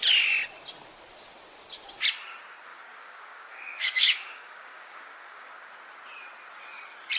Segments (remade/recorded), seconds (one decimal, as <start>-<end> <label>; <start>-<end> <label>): 0.0-2.7 recorded; 2.7-5.7 remade; 5.7-7.2 recorded